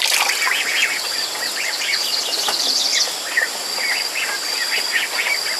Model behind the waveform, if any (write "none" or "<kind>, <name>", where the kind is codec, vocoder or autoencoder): none